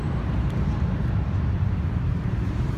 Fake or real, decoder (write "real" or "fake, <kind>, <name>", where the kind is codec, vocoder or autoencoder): fake, vocoder, BigVGAN v2